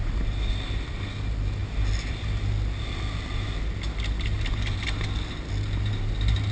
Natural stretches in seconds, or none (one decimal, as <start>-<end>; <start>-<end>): 0.0-6.5